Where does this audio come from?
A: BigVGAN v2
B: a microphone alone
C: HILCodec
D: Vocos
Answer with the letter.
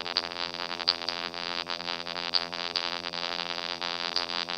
A